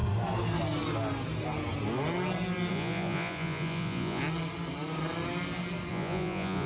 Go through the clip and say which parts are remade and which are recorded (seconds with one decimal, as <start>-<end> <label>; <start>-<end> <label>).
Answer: 0.0-2.7 recorded; 2.7-4.2 remade; 4.2-5.9 recorded; 5.9-6.7 remade